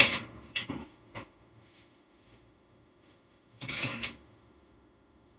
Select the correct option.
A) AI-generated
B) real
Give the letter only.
A